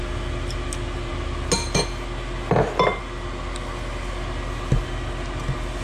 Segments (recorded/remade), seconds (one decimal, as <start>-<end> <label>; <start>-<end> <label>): 0.0-5.8 recorded